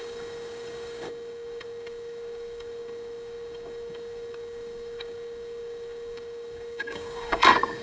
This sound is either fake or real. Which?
fake